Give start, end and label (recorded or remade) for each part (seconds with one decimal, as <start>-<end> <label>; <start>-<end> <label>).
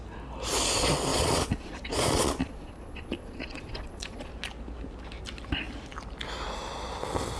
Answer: 0.0-1.1 recorded; 1.1-4.3 remade; 4.3-7.4 recorded